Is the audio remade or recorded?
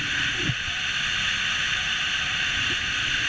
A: recorded